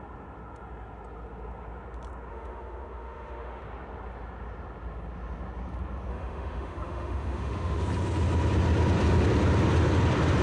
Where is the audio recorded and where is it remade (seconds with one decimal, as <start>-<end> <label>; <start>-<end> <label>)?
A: 0.0-2.3 recorded; 2.3-3.6 remade; 3.6-6.1 recorded; 6.1-7.8 remade; 7.8-10.4 recorded